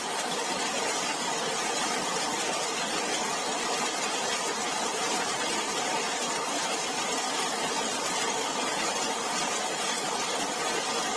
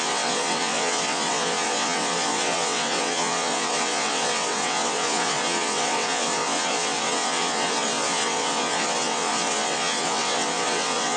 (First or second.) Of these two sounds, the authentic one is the first